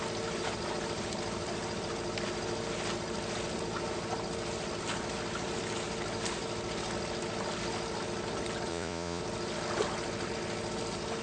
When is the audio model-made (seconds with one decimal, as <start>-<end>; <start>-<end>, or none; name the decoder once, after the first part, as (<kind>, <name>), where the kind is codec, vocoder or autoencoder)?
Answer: 8.7-9.2 (vocoder, Vocos)

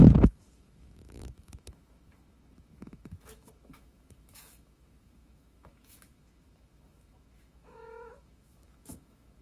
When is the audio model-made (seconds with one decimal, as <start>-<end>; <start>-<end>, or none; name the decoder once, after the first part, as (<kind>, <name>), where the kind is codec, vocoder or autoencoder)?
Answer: 0.0-9.4 (autoencoder, DAC-VAE)

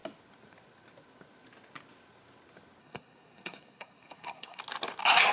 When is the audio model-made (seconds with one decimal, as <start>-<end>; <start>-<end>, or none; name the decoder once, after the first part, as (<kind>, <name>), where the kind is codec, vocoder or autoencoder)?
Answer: 2.8-4.6 (codec, SNAC)

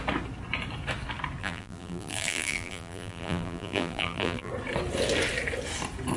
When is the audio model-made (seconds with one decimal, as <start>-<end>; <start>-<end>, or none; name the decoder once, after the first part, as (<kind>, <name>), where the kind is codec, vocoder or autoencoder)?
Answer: 1.4-4.5 (vocoder, BigVGAN v2)

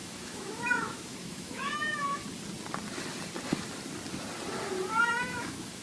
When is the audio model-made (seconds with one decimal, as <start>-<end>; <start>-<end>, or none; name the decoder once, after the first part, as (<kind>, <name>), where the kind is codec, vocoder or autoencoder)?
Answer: 0.0-2.2 (autoencoder, DAC-VAE); 5.0-5.8

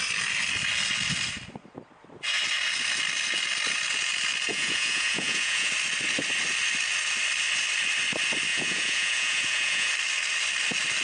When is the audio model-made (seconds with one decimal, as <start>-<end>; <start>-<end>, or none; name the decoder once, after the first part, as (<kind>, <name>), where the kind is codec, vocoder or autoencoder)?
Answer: 4.5-5.7 (vocoder, Vocos); 8.5-9.9

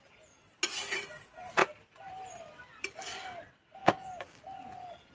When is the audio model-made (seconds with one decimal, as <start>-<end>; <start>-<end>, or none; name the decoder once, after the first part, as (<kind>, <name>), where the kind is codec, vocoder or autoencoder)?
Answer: 3.8-4.4 (codec, DAC)

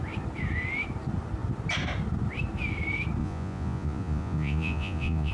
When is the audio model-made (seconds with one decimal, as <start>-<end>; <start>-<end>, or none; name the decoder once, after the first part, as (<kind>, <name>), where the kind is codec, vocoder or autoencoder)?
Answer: 3.2-5.3 (vocoder, Vocos)